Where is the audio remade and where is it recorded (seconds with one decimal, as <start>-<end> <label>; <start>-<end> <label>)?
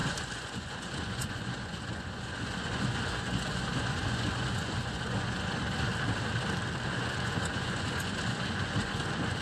0.0-5.9 remade; 5.9-6.9 recorded; 6.9-9.4 remade